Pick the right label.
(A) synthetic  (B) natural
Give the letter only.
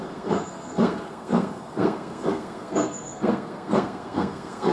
A